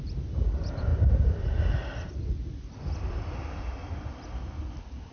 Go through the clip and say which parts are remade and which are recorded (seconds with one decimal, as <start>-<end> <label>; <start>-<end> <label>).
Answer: 0.0-5.1 recorded